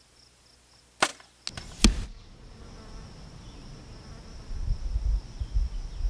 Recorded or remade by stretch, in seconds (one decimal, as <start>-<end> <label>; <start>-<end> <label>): 0.0-6.1 recorded